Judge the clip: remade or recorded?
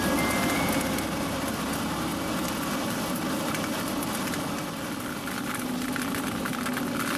recorded